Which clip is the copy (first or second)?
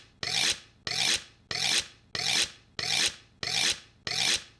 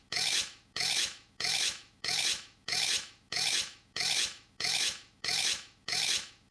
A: second